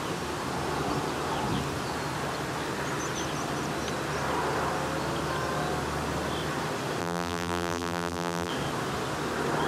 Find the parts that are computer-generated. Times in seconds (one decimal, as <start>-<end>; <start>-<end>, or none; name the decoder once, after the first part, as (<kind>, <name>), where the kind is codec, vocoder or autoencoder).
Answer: 7.0-8.5 (vocoder, BigVGAN v2)